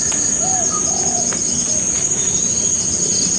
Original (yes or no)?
yes